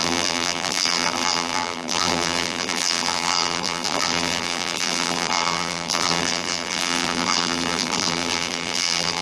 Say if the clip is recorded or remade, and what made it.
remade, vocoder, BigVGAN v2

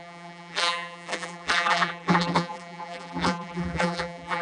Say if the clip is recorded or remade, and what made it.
remade, vocoder, BigVGAN v2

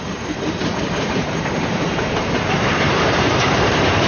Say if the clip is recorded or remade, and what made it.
remade, vocoder, BigVGAN v2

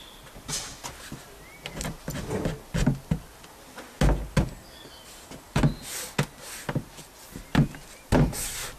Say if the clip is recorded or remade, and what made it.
recorded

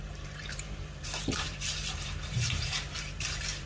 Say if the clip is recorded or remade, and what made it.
remade, vocoder, BigVGAN v2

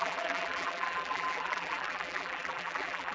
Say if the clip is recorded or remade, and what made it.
remade, vocoder, BigVGAN v2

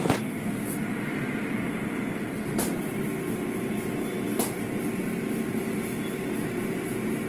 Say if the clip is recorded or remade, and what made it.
recorded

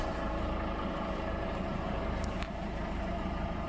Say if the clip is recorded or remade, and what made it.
remade, vocoder, BigVGAN v2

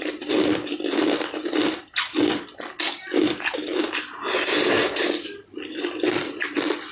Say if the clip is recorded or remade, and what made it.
recorded